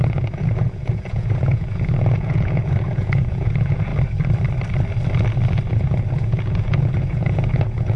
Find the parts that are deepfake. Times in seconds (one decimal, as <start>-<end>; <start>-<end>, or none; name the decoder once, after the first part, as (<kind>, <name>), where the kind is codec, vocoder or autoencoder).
0.0-3.9 (vocoder, Vocos); 5.7-8.0

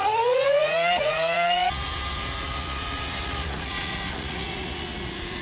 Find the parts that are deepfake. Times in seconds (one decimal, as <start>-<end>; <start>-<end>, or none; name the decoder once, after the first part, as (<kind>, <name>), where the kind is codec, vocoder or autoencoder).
0.0-5.4 (vocoder, Vocos)

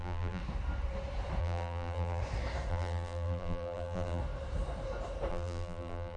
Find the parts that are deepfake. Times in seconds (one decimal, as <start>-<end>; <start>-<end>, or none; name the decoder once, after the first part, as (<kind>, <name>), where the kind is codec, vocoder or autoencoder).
0.0-0.4 (vocoder, BigVGAN v2); 1.4-2.2; 2.7-4.2; 5.3-6.2

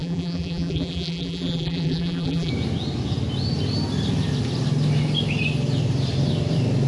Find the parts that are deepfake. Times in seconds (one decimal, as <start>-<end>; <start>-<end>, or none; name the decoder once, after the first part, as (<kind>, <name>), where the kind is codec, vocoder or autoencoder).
0.0-2.5 (vocoder, BigVGAN v2)

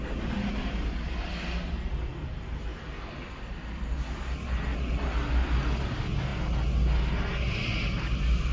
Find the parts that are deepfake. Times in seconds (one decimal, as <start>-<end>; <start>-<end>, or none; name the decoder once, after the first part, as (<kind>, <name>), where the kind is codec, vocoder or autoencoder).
none